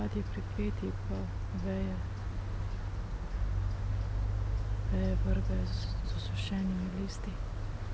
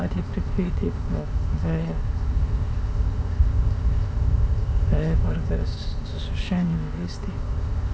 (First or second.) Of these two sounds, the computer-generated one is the second